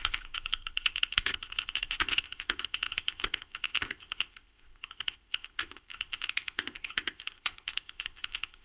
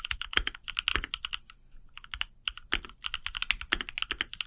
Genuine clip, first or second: second